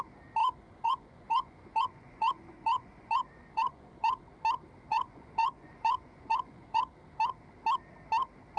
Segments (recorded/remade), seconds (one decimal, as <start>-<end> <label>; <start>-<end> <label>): 0.0-0.4 recorded; 0.4-4.2 remade; 4.2-4.9 recorded; 4.9-6.8 remade; 6.8-8.6 recorded